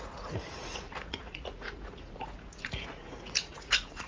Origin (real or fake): fake